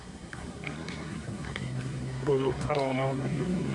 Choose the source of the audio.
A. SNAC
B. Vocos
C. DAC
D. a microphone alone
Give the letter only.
A